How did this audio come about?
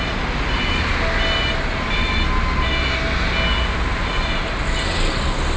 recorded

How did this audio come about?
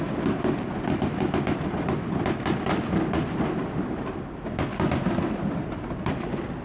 remade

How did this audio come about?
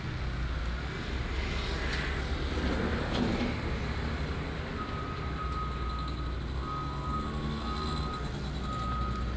recorded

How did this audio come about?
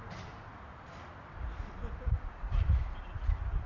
recorded